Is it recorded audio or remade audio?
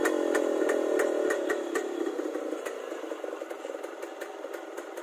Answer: recorded